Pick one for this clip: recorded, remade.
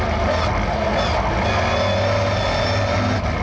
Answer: recorded